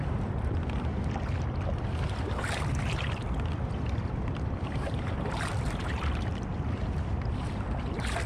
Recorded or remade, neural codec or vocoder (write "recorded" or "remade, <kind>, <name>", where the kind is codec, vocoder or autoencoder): remade, vocoder, BigVGAN v2